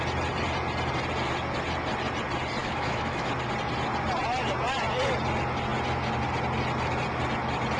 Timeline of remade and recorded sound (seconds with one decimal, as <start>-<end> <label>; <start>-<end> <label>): 0.0-2.6 recorded; 2.6-3.3 remade; 3.3-7.8 recorded